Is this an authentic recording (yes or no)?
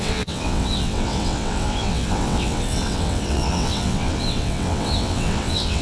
no